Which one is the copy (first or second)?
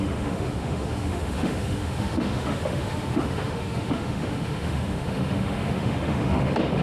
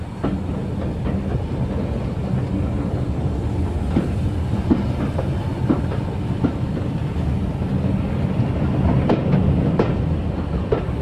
first